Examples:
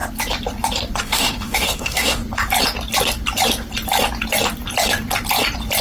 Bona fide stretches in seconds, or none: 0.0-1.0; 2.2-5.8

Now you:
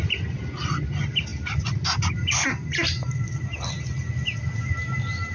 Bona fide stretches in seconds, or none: 0.0-5.3